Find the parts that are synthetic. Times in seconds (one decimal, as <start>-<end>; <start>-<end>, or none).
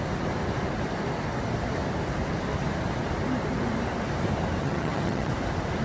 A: 4.6-5.3